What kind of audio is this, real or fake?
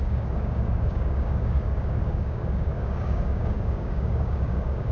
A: fake